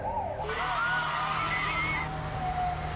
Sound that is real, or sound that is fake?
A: real